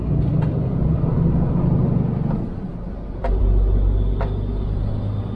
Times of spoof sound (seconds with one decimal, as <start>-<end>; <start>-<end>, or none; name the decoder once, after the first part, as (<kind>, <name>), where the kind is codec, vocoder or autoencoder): none